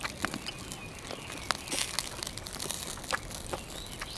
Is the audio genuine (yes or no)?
yes